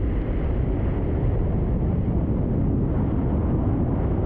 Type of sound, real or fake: real